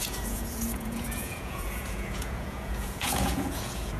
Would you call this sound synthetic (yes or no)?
yes